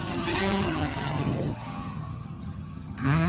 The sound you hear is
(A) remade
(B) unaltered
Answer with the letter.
A